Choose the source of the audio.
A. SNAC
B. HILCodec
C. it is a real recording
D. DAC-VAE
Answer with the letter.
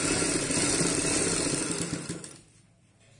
C